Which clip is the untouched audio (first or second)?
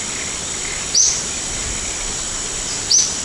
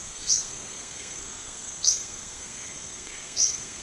first